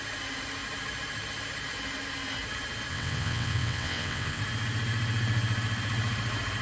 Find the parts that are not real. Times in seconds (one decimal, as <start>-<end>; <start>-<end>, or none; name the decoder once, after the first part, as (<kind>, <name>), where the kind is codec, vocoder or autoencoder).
2.9-4.4 (vocoder, WaveNeXt)